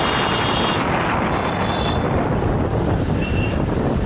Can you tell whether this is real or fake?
real